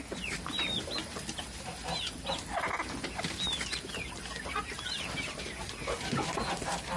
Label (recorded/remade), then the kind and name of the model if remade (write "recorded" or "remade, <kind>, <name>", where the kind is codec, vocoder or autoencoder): recorded